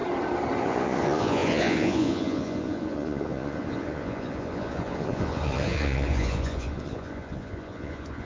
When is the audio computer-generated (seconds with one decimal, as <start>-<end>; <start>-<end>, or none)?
0.6-8.3